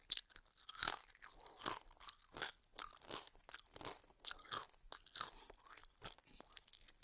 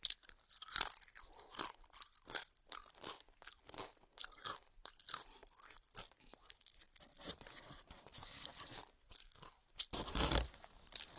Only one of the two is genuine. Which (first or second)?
first